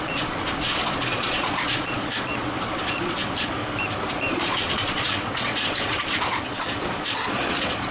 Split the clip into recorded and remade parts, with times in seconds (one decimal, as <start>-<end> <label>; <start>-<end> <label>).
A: 0.0-3.6 remade; 3.6-4.1 recorded; 4.1-7.9 remade